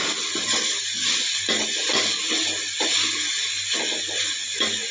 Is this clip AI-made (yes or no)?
no